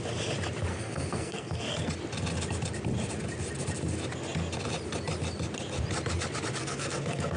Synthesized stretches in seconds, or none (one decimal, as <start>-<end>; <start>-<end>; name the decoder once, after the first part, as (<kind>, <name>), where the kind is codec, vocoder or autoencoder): 0.7-1.9 (codec, SNAC); 6.6-7.4